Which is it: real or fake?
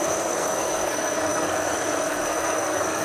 fake